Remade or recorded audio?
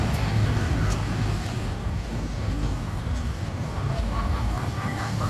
remade